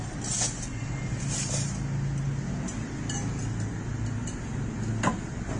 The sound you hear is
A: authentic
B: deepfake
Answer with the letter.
A